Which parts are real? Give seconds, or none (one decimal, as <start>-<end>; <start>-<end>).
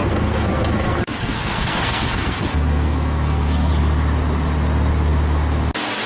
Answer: 3.7-6.1